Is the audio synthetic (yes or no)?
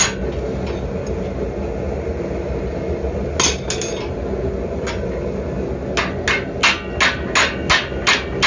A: no